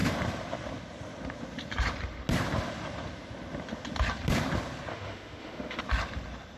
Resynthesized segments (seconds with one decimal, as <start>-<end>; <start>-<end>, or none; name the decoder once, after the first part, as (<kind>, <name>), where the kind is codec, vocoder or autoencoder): 4.9-5.8 (autoencoder, DAC-VAE)

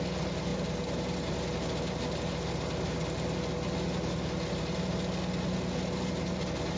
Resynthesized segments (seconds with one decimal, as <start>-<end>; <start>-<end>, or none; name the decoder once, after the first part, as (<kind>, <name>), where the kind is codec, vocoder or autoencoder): none

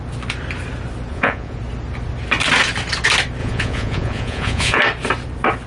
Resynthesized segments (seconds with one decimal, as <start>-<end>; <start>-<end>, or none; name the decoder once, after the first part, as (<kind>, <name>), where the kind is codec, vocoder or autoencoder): 1.1-1.6 (vocoder, Vocos); 3.4-4.8

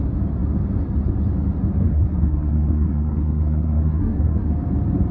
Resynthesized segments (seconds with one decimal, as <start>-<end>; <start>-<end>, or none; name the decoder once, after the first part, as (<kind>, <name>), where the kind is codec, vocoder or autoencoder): 1.9-4.5 (codec, SNAC)

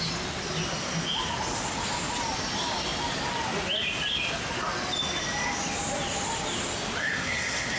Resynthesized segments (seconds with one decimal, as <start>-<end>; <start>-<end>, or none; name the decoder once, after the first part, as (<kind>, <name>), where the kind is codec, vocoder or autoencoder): 7.0-7.8 (codec, SNAC)